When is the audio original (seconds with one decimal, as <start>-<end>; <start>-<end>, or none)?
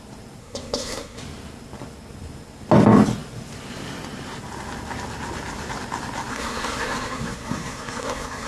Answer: 0.0-0.4; 1.2-6.3